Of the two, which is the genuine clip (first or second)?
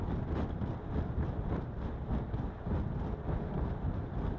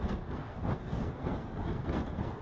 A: first